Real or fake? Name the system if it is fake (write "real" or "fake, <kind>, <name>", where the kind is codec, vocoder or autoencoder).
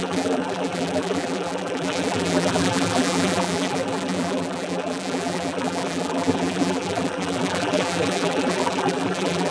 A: fake, vocoder, BigVGAN v2